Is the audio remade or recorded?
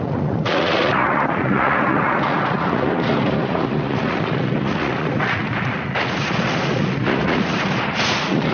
remade